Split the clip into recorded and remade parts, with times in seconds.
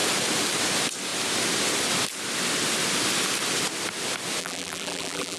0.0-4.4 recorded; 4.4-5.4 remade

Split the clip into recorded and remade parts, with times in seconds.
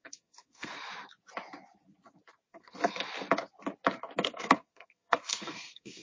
0.0-0.7 remade; 0.7-2.5 recorded; 2.5-3.0 remade; 3.0-4.2 recorded; 4.2-6.0 remade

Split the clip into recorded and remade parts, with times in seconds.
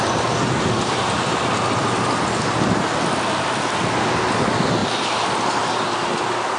0.0-6.6 recorded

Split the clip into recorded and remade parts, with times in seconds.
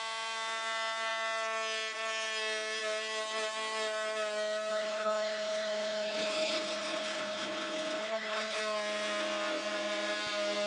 0.0-4.7 recorded; 4.7-8.6 remade; 8.6-10.7 recorded